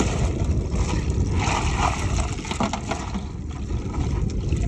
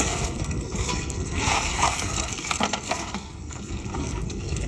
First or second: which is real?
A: first